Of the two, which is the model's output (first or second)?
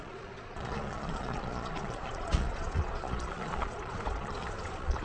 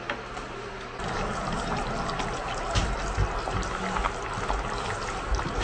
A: first